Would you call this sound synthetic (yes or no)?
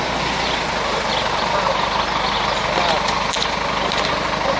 no